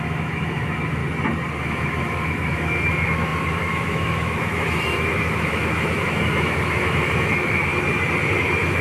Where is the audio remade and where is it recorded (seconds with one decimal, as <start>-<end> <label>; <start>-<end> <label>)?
0.0-1.0 remade; 1.0-1.6 recorded; 1.6-7.7 remade; 7.7-8.4 recorded; 8.4-8.8 remade